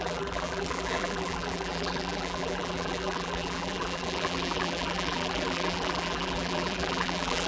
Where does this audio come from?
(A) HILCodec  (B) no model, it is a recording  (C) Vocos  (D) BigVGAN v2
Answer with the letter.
D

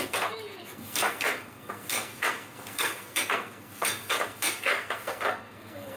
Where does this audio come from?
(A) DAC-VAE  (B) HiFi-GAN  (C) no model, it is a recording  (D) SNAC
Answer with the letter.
D